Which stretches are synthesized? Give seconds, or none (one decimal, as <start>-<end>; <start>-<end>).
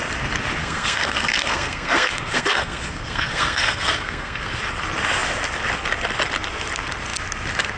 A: 0.6-4.6